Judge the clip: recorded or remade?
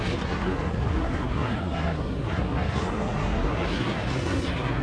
remade